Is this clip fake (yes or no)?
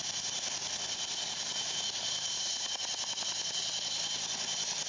no